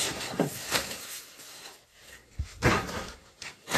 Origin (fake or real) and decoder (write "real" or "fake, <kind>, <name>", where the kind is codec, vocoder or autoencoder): fake, codec, SNAC